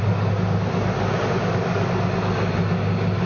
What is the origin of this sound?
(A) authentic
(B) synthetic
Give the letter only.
A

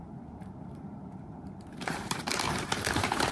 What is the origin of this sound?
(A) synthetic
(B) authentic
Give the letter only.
A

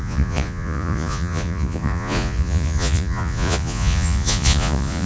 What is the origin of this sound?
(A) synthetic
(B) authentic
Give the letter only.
A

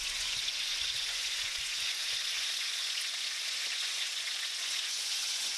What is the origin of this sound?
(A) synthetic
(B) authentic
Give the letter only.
A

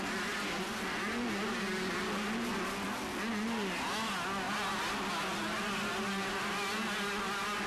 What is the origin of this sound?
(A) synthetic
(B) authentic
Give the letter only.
B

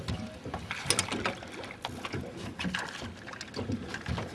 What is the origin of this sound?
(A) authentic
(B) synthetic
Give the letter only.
A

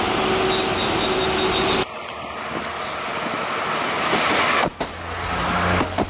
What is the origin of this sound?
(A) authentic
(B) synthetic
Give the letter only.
A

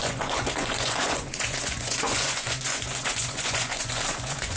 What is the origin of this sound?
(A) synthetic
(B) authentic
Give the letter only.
A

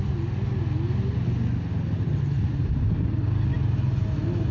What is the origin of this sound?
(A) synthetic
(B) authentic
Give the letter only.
B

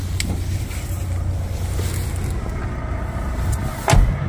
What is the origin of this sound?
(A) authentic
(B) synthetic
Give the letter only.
A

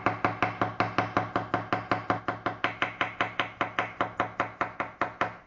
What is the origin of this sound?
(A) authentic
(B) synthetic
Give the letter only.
A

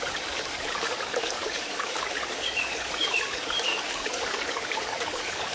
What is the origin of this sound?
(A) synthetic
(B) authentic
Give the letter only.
A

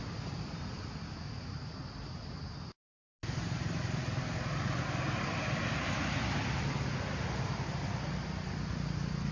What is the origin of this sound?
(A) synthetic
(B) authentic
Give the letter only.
B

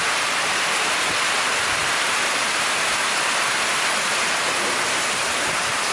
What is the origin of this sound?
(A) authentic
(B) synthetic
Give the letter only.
B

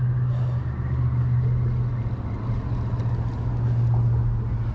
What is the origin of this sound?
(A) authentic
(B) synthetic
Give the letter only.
A